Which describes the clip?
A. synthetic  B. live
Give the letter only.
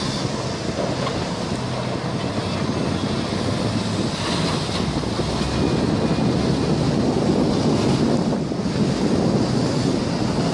B